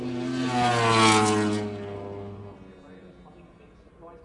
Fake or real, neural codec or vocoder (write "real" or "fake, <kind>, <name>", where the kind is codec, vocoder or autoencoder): real